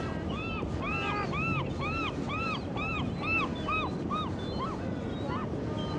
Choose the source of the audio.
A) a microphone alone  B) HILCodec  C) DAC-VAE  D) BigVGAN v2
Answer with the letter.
A